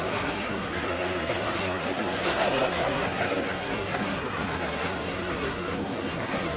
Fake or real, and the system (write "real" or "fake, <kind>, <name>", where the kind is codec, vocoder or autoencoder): fake, codec, SNAC